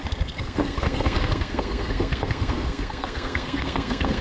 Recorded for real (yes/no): no